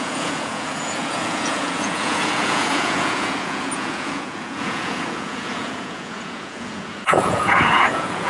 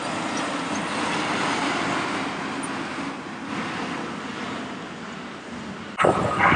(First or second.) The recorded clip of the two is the second